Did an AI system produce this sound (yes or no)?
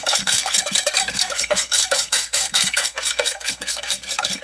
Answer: yes